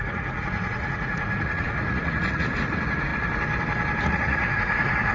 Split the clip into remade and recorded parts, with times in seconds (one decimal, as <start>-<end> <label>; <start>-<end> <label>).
0.0-3.1 remade; 3.1-4.0 recorded; 4.0-5.1 remade